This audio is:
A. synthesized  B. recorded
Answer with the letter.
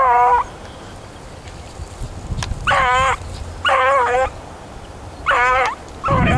B